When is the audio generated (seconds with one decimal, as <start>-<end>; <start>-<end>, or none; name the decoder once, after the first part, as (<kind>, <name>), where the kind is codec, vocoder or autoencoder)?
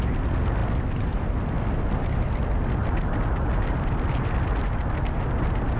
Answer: none